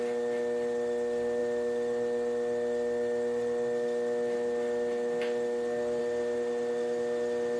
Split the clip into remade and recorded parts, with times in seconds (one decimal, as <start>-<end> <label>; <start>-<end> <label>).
0.0-7.6 recorded